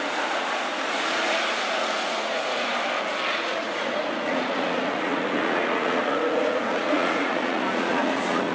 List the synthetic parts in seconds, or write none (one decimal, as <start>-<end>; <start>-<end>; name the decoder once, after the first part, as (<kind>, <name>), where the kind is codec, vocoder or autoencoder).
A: 0.0-2.7 (vocoder, Vocos); 3.3-8.5